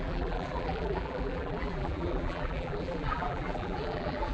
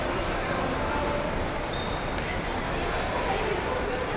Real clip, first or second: second